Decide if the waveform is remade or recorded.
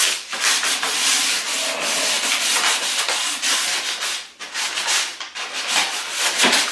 recorded